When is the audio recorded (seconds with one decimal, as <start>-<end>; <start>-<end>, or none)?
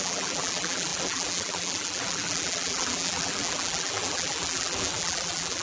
none